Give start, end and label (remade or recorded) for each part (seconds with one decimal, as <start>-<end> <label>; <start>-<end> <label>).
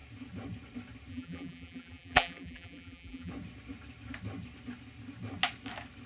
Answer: 0.0-1.1 recorded; 1.1-3.3 remade; 3.3-6.1 recorded